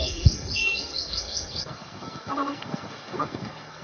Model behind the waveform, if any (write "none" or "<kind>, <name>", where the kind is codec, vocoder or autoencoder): codec, SNAC